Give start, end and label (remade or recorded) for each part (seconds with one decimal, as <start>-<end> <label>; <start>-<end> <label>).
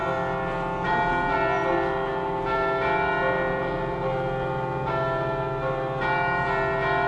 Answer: 0.0-7.1 recorded